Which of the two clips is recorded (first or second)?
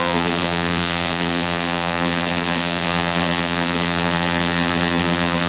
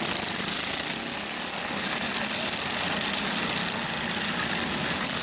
second